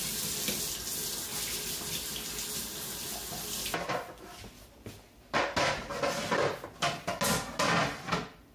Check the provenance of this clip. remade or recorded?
recorded